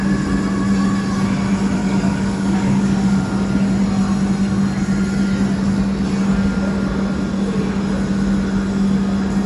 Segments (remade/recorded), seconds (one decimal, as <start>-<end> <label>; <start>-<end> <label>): 0.0-1.8 recorded; 1.8-3.2 remade; 3.2-9.5 recorded